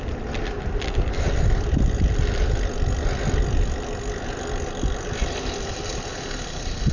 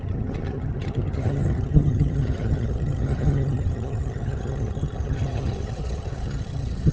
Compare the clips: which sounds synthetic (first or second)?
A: second